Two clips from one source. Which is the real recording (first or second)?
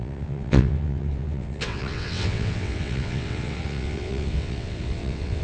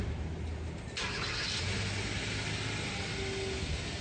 second